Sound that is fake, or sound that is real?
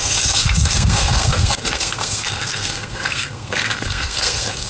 fake